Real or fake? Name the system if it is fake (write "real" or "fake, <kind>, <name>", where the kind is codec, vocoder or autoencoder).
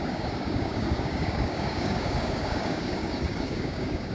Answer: fake, codec, DAC